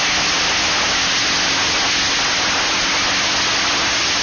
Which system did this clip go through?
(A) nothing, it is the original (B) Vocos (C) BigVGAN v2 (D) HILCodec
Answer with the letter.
A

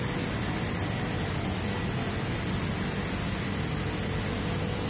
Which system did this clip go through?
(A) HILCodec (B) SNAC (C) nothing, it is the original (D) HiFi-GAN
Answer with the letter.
C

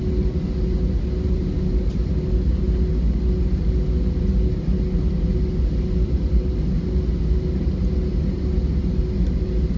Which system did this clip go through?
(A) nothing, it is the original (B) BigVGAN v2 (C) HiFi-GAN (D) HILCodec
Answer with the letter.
A